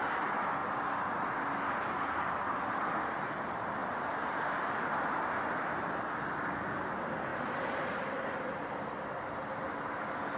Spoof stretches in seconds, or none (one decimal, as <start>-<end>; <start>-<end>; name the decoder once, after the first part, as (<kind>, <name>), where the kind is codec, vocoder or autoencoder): 7.3-7.9 (vocoder, BigVGAN v2)